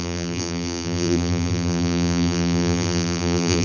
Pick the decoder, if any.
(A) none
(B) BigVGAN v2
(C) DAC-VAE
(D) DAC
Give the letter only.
B